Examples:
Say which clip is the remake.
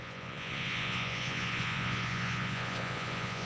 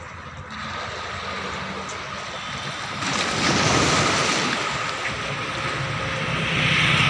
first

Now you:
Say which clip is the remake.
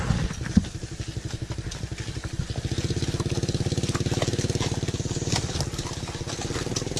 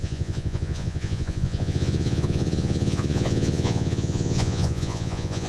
second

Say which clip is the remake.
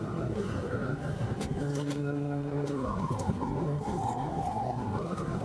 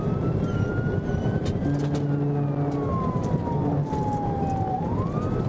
first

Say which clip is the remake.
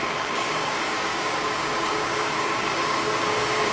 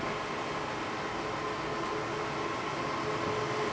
first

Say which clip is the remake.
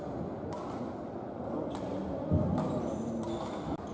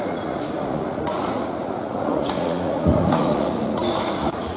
second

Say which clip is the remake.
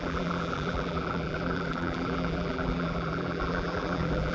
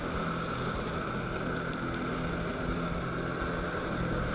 first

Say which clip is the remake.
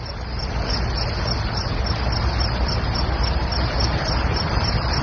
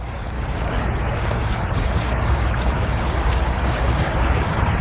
second